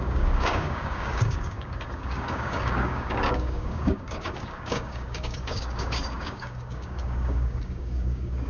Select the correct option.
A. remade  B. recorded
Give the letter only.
A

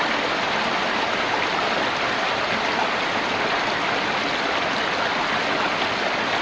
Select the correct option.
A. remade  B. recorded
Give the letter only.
B